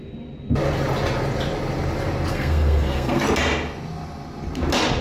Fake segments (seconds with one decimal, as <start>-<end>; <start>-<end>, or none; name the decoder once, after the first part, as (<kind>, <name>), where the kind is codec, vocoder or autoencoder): 2.3-3.2 (codec, SNAC)